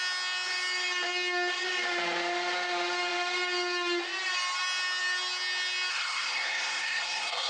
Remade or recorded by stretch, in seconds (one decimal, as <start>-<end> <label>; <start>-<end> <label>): 0.0-5.9 recorded; 5.9-7.5 remade